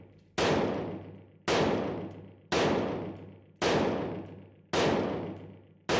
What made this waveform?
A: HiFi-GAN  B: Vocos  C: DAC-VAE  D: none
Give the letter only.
D